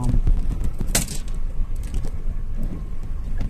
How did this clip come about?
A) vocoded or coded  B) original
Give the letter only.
B